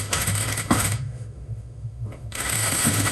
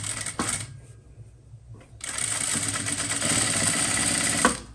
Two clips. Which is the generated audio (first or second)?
first